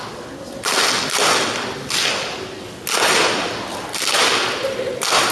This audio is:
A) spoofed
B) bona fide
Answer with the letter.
B